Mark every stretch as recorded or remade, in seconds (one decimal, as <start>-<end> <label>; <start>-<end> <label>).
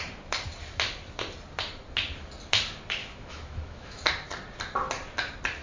0.0-3.0 recorded; 3.0-4.1 remade; 4.1-5.6 recorded